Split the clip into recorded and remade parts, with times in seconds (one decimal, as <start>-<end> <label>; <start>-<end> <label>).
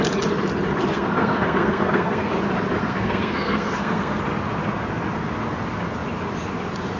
0.0-0.9 recorded; 0.9-2.3 remade; 2.3-2.8 recorded; 2.8-4.2 remade; 4.2-7.0 recorded